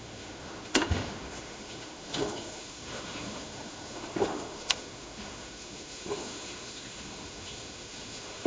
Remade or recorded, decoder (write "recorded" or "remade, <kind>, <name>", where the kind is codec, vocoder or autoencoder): remade, autoencoder, DAC-VAE